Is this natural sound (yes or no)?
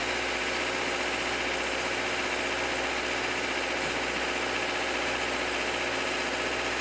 yes